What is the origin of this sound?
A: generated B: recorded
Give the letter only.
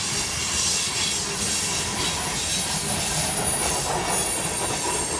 B